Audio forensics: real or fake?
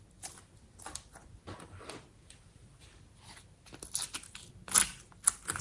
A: real